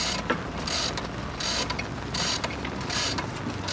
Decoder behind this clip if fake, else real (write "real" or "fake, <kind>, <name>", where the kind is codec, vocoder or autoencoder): real